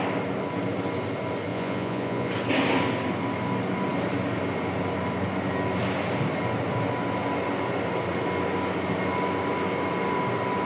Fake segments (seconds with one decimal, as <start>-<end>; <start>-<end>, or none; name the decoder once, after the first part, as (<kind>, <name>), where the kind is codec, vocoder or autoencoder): 1.5-2.3 (vocoder, Vocos)